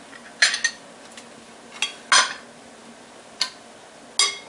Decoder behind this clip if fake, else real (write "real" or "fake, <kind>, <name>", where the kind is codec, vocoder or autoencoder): real